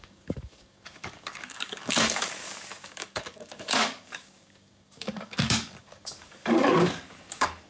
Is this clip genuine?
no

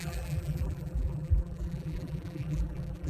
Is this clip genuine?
no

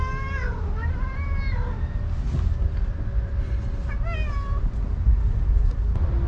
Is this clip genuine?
yes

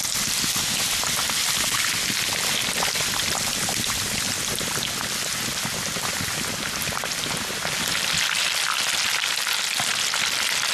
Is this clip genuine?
yes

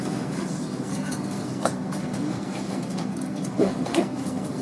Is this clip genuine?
no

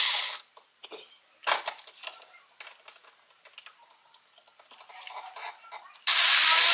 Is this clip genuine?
yes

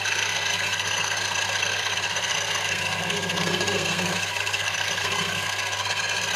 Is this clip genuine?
no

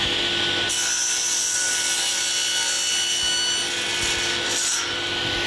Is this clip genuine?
yes